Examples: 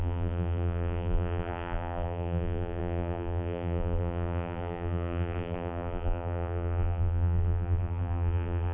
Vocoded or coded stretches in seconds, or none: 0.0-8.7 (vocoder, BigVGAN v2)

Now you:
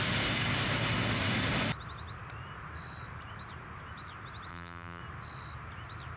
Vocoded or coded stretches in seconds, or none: 4.5-5.0 (vocoder, BigVGAN v2)

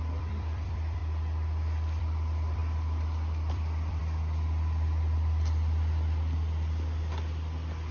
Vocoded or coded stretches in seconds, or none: 0.0-1.0 (vocoder, BigVGAN v2); 2.0-2.6; 3.5-4.0

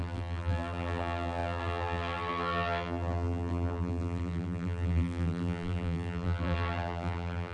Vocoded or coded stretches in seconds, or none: 0.0-7.5 (vocoder, BigVGAN v2)

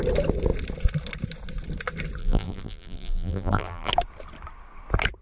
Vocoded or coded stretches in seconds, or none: 2.2-3.9 (vocoder, BigVGAN v2)

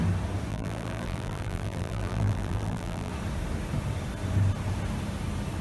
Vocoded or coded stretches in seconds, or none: 0.5-3.1 (vocoder, BigVGAN v2)